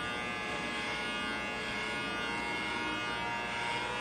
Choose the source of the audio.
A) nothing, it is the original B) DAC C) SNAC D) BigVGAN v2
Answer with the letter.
A